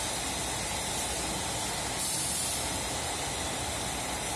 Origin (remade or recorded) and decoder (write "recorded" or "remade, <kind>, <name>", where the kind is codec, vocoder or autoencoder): recorded